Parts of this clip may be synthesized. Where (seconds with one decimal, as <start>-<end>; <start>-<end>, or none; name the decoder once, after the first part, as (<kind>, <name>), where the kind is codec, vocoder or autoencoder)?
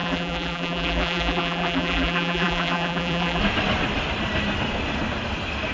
0.0-3.4 (vocoder, BigVGAN v2)